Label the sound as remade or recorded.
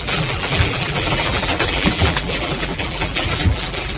remade